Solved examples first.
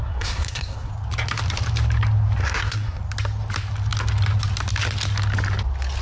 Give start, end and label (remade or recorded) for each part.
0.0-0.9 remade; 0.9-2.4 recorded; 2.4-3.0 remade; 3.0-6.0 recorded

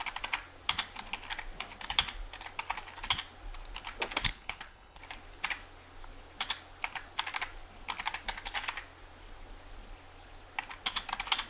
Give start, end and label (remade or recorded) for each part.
0.0-4.3 recorded; 4.3-5.0 remade; 5.0-11.5 recorded

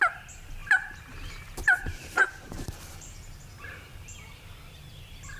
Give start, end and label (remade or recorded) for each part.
0.0-0.6 recorded; 0.6-3.8 remade; 3.8-5.4 recorded